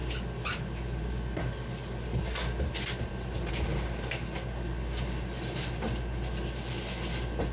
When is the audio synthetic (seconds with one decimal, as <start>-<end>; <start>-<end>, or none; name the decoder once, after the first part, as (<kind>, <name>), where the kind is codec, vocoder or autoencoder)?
none